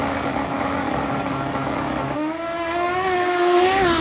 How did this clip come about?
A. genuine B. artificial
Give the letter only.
B